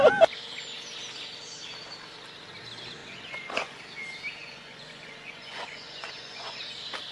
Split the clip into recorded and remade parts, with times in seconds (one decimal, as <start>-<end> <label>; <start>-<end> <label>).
0.0-3.0 recorded; 3.0-3.8 remade; 3.8-4.4 recorded; 4.4-6.6 remade; 6.6-7.1 recorded